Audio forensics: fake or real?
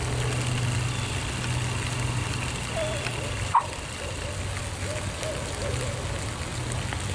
real